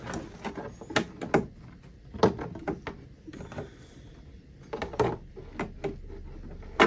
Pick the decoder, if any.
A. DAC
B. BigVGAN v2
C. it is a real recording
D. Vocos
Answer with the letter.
C